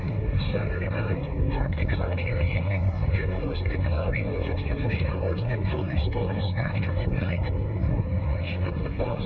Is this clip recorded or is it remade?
remade